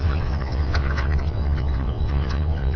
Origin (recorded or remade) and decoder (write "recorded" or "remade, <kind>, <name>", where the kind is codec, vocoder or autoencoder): remade, vocoder, WaveNeXt